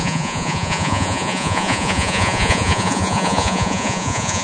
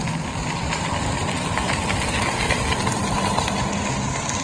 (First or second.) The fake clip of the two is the first